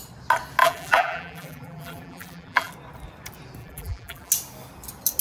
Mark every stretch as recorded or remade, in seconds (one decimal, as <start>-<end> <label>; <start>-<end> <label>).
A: 0.0-0.6 recorded; 0.6-2.7 remade; 2.7-3.6 recorded; 3.6-4.3 remade; 4.3-5.2 recorded